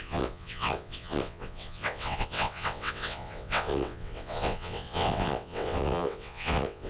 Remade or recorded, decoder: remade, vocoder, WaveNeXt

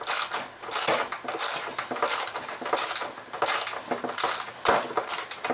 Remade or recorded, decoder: recorded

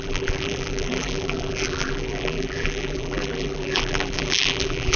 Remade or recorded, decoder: remade, vocoder, BigVGAN v2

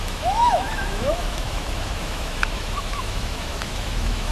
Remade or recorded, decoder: remade, autoencoder, DAC-VAE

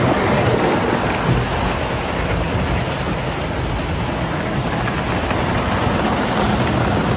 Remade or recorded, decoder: recorded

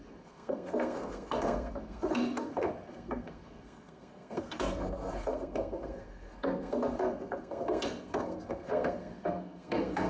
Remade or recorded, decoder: remade, codec, SNAC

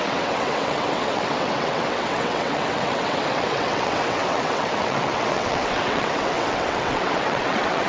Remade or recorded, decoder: remade, vocoder, WaveNeXt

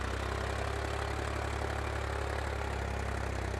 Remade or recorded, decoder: recorded